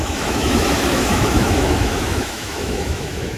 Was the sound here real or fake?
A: fake